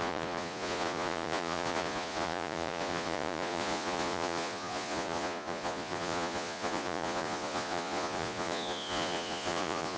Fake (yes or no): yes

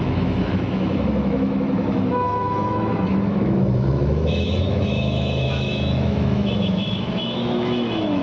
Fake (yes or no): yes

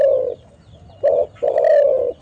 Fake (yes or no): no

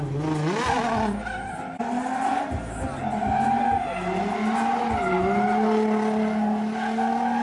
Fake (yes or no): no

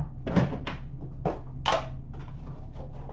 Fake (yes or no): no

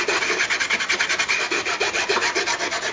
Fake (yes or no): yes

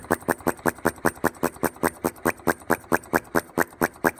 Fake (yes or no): no